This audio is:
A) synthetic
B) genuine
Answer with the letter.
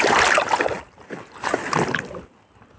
B